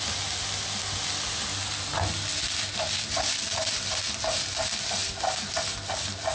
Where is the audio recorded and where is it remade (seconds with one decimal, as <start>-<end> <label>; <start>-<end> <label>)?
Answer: 0.0-6.3 recorded